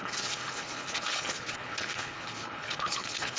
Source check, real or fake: fake